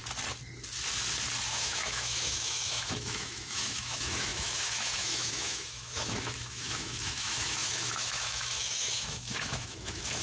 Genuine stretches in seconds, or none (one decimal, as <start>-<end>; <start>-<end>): 0.0-1.5